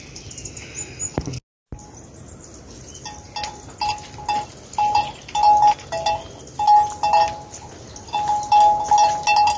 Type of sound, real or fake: real